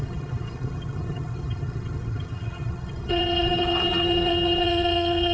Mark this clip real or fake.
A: fake